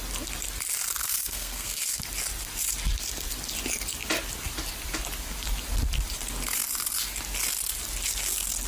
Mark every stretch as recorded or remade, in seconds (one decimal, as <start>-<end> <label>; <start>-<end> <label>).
0.0-1.0 recorded; 1.0-2.0 remade; 2.0-8.7 recorded